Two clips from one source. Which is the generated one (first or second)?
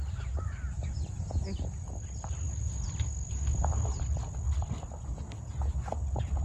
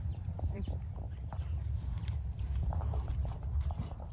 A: second